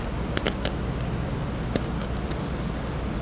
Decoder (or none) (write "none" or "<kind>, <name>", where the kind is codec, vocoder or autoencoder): none